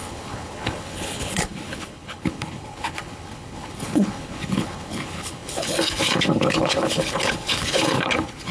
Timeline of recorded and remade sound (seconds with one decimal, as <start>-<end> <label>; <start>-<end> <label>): 0.0-8.5 remade